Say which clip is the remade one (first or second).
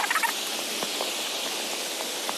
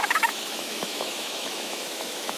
second